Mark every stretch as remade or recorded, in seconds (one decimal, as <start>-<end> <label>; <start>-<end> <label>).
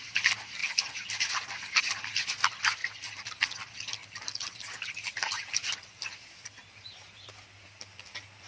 0.0-0.6 recorded; 0.6-1.8 remade; 1.8-2.8 recorded; 2.8-3.4 remade; 3.4-4.0 recorded; 4.0-7.3 remade; 7.3-8.5 recorded